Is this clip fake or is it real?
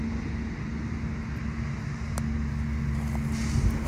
real